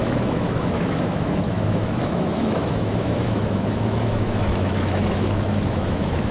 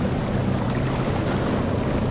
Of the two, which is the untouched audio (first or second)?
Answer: second